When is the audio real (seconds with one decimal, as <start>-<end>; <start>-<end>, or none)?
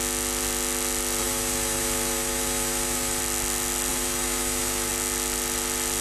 0.0-1.2; 3.2-3.9; 4.9-6.0